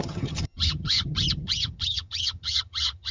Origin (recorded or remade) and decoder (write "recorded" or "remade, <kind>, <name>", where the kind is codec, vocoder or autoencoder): remade, vocoder, HiFi-GAN